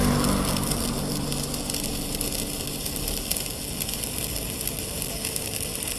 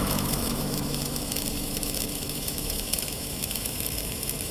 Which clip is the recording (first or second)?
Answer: first